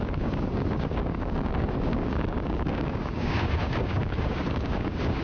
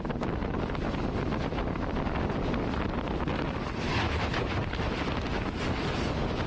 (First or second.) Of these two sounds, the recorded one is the second